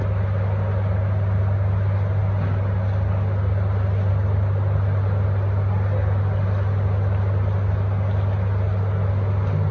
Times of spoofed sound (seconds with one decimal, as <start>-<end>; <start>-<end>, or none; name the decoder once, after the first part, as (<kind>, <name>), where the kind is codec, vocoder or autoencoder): none